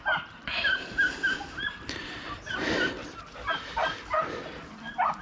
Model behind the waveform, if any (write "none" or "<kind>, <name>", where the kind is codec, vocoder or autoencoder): none